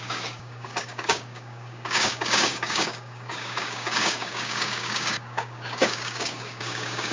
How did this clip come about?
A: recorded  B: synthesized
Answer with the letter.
B